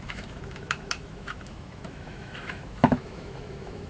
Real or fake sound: fake